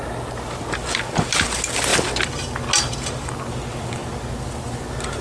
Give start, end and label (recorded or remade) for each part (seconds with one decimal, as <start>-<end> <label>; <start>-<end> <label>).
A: 0.0-5.2 recorded